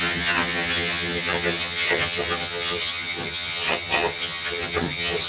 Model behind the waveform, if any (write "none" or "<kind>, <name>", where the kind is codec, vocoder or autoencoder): vocoder, HiFi-GAN